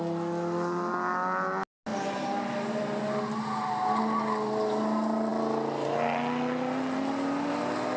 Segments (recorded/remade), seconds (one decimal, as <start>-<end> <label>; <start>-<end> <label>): 0.0-8.0 recorded